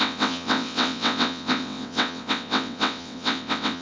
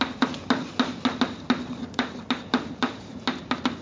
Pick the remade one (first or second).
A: first